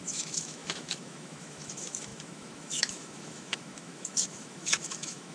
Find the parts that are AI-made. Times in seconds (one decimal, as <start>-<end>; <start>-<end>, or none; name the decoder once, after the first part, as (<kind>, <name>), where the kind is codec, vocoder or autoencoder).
0.0-5.3 (autoencoder, DAC-VAE)